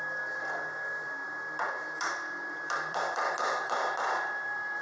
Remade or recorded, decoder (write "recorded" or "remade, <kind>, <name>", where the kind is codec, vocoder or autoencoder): remade, vocoder, BigVGAN v2